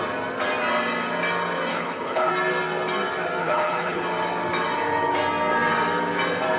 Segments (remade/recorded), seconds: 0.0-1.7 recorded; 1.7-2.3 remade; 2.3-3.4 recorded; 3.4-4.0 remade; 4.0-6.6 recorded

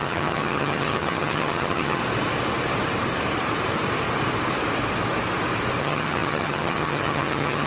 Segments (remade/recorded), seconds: 0.0-2.0 remade; 2.0-5.8 recorded; 5.8-7.7 remade

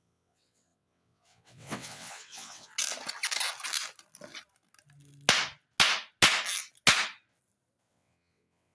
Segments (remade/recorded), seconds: 0.0-2.7 remade; 2.7-7.9 recorded; 7.9-8.7 remade

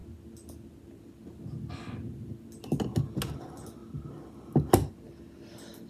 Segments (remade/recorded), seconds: 0.0-5.9 recorded